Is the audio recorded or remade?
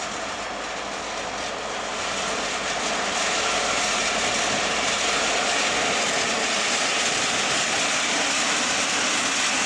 recorded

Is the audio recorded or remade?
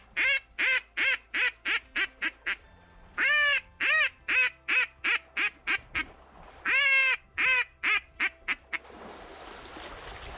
recorded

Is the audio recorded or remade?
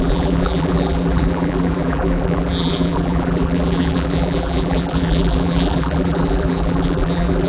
remade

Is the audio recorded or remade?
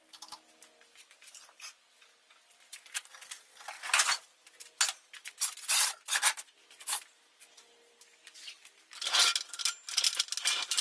recorded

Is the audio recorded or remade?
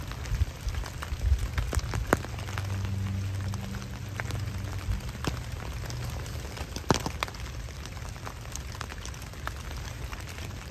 recorded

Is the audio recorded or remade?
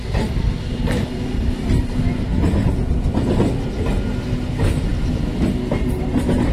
recorded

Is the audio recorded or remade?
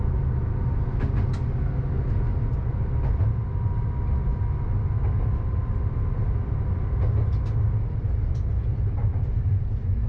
recorded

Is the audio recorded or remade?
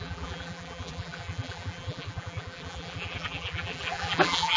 remade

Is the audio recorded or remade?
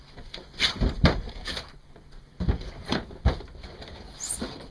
remade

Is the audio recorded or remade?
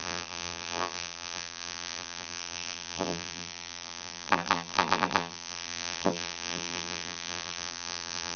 remade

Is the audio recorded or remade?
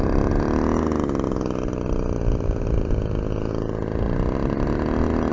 recorded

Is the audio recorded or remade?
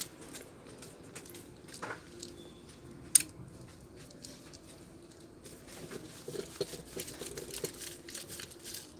recorded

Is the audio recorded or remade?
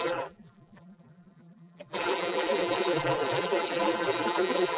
remade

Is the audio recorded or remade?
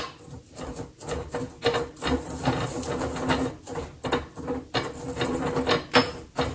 recorded